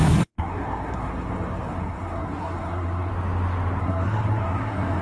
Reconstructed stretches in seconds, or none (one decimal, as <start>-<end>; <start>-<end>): 0.0-3.1; 3.8-5.0